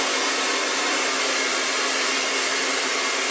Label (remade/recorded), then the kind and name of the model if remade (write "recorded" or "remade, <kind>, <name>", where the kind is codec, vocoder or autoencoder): recorded